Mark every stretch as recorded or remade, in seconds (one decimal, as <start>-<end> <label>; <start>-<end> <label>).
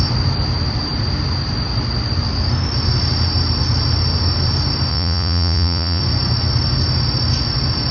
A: 0.0-4.9 recorded; 4.9-6.0 remade; 6.0-7.9 recorded